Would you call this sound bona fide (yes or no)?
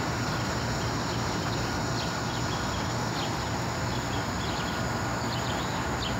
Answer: yes